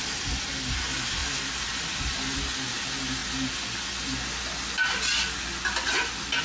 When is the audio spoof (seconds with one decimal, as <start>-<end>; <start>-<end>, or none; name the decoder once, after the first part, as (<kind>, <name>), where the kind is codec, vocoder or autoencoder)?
none